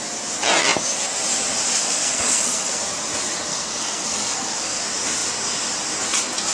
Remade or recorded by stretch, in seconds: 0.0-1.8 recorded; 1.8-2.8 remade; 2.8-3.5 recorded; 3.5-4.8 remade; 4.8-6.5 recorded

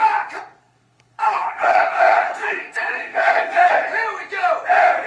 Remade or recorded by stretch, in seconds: 0.0-0.6 recorded; 0.6-3.7 remade; 3.7-5.1 recorded

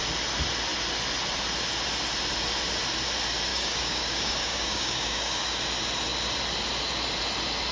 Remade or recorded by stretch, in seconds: 0.0-3.5 recorded; 3.5-5.6 remade; 5.6-7.7 recorded

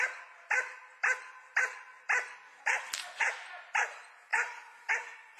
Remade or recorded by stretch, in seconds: 0.0-4.3 recorded; 4.3-4.9 remade; 4.9-5.4 recorded